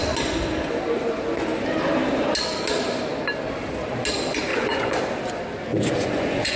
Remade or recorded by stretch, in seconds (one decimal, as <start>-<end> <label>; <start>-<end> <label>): 0.0-4.5 recorded; 4.5-5.0 remade; 5.0-5.7 recorded; 5.7-6.6 remade